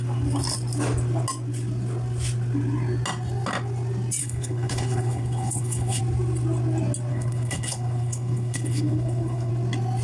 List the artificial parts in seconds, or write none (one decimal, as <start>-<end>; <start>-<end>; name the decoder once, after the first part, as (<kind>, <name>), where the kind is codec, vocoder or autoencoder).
4.2-6.0 (codec, HILCodec); 7.1-9.5